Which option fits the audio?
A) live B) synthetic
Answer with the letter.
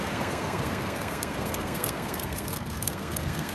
B